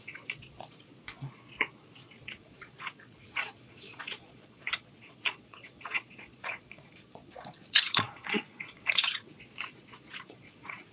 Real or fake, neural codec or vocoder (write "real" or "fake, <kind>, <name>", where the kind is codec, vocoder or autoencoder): fake, vocoder, Vocos